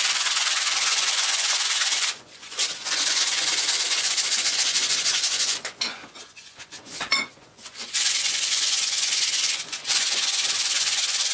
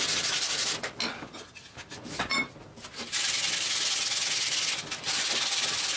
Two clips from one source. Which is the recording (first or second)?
second